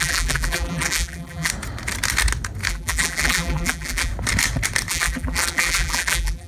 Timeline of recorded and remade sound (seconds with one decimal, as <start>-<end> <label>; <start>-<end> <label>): 0.0-1.5 remade; 1.5-2.7 recorded; 2.7-4.1 remade; 4.1-4.9 recorded; 4.9-6.5 remade

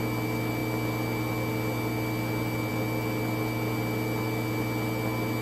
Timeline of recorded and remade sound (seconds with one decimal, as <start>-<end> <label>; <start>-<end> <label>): 0.0-5.4 recorded

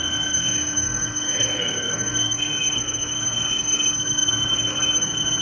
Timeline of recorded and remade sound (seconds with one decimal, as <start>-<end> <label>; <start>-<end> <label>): 0.0-5.4 remade

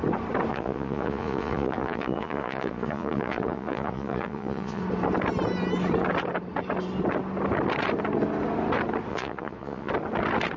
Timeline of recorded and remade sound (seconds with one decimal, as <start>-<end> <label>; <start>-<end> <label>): 0.0-0.5 recorded; 0.5-4.8 remade; 4.8-9.1 recorded; 9.1-9.9 remade; 9.9-10.6 recorded

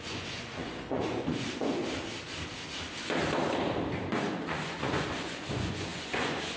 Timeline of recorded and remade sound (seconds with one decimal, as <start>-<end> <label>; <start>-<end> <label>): 0.0-1.8 remade; 1.8-4.2 recorded; 4.2-6.6 remade

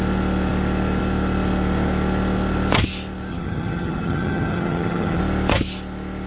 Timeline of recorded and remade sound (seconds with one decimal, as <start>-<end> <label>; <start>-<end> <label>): 0.0-3.3 recorded; 3.3-5.2 remade; 5.2-6.3 recorded

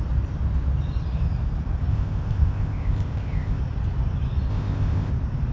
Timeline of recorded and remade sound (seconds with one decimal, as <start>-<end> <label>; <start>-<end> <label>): 0.0-1.9 recorded; 1.9-3.6 remade; 3.6-4.5 recorded; 4.5-5.1 remade; 5.1-5.5 recorded